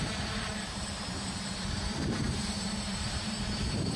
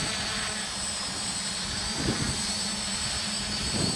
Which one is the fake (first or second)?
first